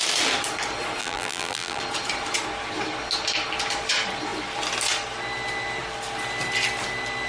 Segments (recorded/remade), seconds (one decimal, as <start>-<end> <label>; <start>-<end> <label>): 0.0-1.0 recorded; 1.0-1.8 remade; 1.8-7.3 recorded